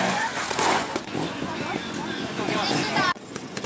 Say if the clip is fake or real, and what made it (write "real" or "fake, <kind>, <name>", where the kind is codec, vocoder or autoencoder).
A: fake, vocoder, Vocos